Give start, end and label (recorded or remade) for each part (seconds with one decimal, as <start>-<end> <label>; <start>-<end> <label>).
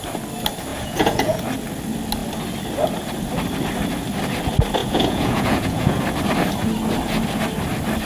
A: 0.0-0.7 recorded; 0.7-1.4 remade; 1.4-4.8 recorded; 4.8-6.0 remade; 6.0-8.0 recorded